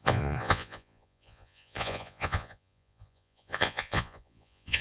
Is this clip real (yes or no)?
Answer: no